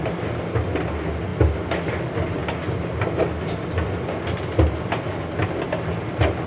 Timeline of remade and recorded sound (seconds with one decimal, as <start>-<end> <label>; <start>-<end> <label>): 0.0-6.5 recorded